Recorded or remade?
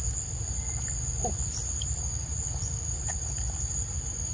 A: recorded